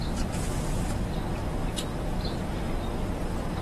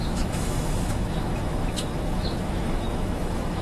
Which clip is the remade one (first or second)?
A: second